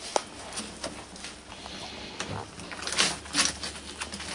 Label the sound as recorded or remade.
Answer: recorded